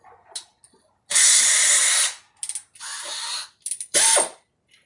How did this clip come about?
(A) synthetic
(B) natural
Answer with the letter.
B